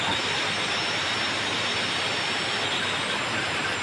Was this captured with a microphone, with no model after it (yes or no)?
no